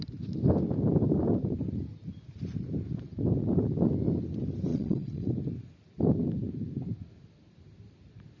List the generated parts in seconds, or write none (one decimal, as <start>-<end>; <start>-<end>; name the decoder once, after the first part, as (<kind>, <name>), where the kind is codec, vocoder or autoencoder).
4.7-5.3 (vocoder, WaveNeXt)